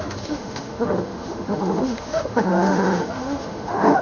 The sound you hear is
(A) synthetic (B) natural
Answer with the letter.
A